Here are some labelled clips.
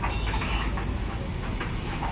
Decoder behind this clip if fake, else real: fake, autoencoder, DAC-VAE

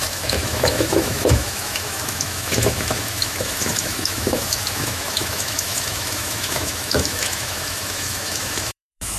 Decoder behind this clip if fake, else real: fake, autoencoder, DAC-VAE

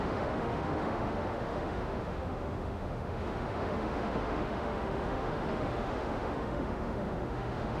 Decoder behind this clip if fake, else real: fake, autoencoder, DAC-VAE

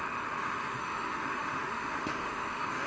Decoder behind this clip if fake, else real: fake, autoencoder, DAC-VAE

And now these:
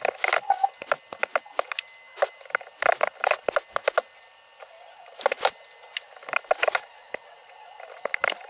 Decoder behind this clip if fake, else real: real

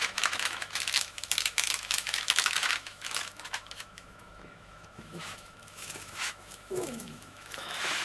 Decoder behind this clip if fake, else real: fake, autoencoder, DAC-VAE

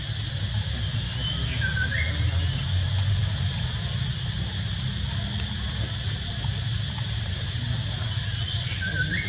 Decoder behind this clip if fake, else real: real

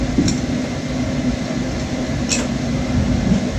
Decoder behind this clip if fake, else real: real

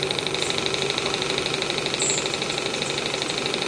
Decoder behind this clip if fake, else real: real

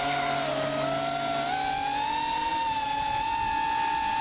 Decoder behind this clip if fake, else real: real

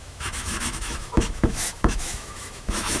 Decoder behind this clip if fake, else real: fake, autoencoder, DAC-VAE